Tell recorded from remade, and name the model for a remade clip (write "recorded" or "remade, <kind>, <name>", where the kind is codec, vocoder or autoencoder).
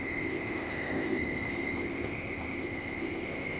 remade, codec, ZipCodec